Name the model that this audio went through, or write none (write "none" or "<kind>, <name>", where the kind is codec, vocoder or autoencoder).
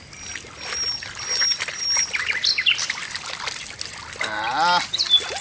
none